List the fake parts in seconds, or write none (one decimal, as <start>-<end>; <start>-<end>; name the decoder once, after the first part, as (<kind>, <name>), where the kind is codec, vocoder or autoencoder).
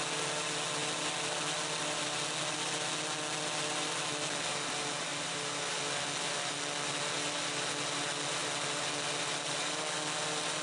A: none